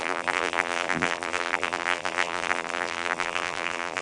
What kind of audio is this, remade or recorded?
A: remade